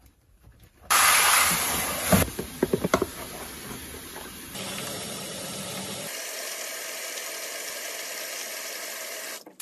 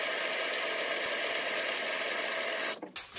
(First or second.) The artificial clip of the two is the first